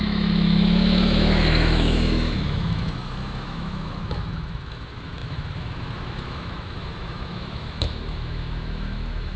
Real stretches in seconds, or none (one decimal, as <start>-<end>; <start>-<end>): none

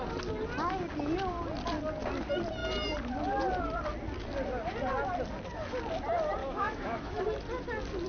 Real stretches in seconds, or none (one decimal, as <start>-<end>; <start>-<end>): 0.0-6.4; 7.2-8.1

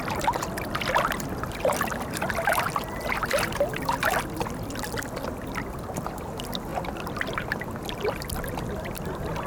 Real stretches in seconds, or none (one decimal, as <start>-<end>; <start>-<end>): 0.0-9.5